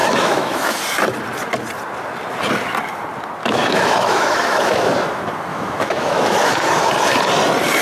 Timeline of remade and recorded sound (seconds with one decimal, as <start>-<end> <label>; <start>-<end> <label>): 0.0-0.8 remade; 0.8-3.4 recorded; 3.4-4.9 remade; 4.9-5.5 recorded; 5.5-6.7 remade; 6.7-7.8 recorded